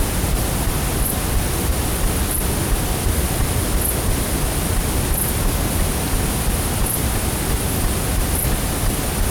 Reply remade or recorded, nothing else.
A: recorded